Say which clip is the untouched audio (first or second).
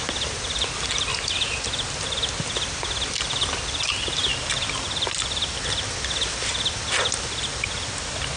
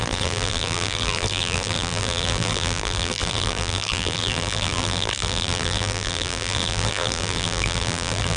first